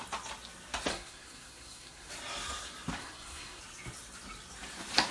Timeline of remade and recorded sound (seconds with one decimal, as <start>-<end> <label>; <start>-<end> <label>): 0.0-0.9 recorded; 0.9-2.1 remade; 2.1-3.0 recorded; 3.0-3.6 remade; 3.6-5.1 recorded